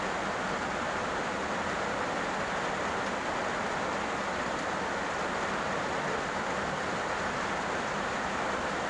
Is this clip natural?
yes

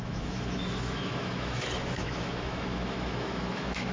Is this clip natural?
no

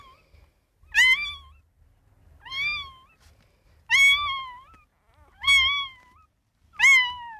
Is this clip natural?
yes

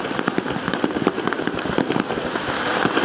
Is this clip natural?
no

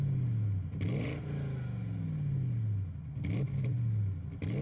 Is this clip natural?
yes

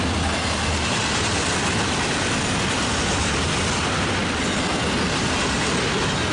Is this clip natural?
yes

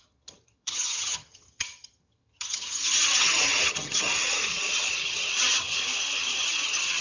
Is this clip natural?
no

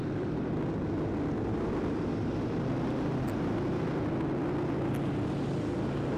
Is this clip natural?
yes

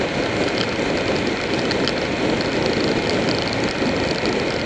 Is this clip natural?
yes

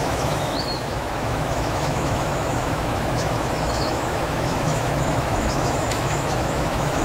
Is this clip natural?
no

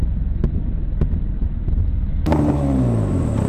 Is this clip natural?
yes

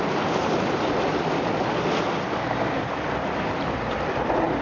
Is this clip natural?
no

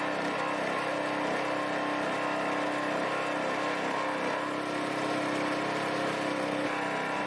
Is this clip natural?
yes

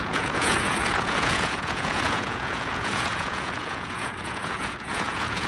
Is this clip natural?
no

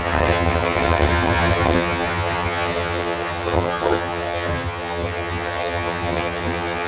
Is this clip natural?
no